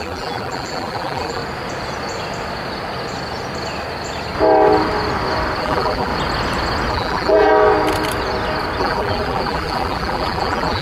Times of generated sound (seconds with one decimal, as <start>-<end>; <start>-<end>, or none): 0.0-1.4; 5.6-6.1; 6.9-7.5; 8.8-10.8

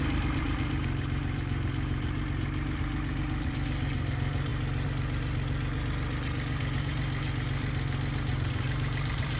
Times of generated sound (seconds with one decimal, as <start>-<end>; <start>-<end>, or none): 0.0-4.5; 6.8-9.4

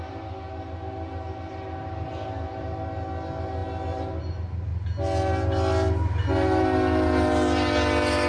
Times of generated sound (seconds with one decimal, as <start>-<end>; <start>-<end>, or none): none

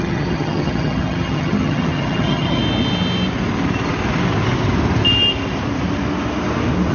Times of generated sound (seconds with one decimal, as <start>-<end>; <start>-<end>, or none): 0.0-2.6

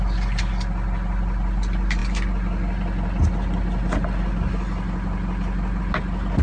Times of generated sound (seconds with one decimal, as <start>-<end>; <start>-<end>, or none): none

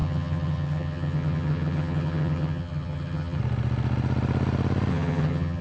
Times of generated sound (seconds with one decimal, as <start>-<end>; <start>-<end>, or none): 0.0-3.4; 4.9-5.6